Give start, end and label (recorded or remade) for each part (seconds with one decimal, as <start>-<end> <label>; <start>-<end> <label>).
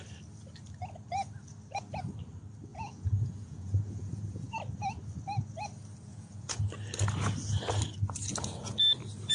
0.0-2.7 recorded; 2.7-4.5 remade; 4.5-6.1 recorded; 6.1-6.6 remade; 6.6-9.3 recorded